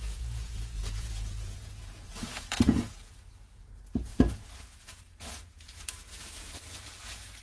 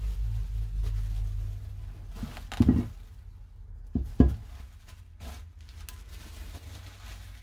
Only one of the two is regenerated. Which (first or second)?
first